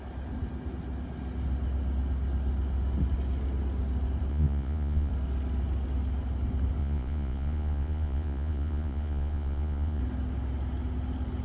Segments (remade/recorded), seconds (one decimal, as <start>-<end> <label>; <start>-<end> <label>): 0.0-4.3 recorded; 4.3-5.1 remade; 5.1-6.8 recorded; 6.8-10.0 remade; 10.0-11.4 recorded